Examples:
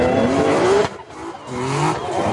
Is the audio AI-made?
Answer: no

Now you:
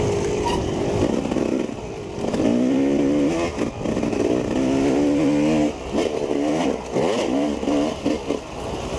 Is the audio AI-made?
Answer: no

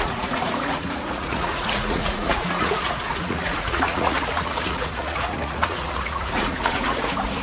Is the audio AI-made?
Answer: yes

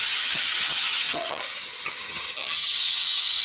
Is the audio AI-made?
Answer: yes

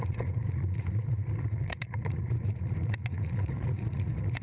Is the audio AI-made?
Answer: yes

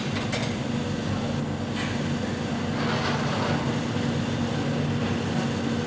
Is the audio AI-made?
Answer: no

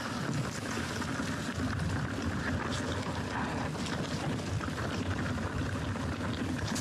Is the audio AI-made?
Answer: no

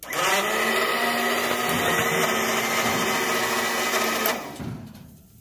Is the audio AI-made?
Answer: no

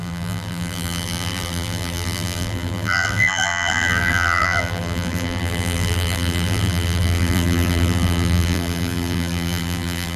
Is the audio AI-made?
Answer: yes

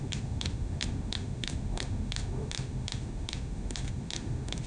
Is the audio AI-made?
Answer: yes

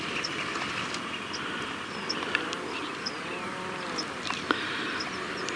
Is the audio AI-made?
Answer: yes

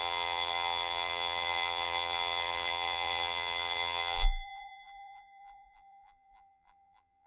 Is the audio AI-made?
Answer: yes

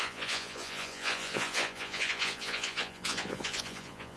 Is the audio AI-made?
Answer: yes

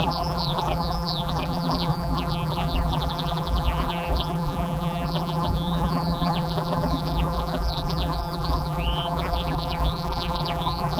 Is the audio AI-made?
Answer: yes